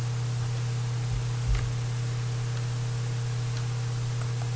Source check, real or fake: real